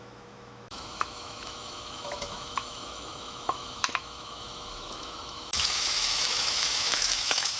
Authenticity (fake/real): fake